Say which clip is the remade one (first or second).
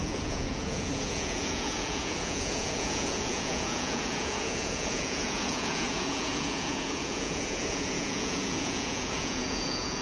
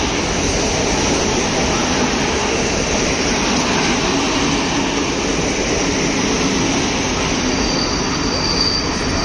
first